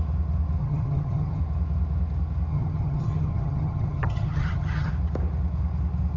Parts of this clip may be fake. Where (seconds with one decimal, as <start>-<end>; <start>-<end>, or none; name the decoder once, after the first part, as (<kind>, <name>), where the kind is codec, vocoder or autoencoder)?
0.6-1.4 (vocoder, HiFi-GAN); 2.5-4.9